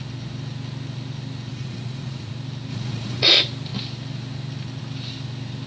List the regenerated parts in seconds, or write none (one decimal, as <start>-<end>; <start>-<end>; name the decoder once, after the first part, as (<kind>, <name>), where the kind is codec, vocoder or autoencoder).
1.5-2.3 (vocoder, Vocos); 2.7-3.3